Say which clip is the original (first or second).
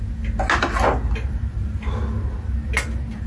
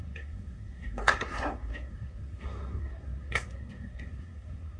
first